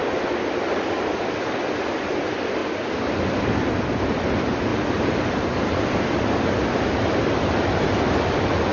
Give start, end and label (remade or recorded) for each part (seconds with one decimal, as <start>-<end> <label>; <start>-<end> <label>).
0.0-8.7 recorded